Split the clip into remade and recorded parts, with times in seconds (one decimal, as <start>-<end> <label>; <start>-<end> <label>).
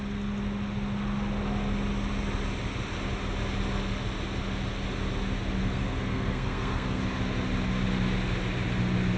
0.0-5.6 recorded; 5.6-7.0 remade; 7.0-9.2 recorded